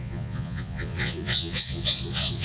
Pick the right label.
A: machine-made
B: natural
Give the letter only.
A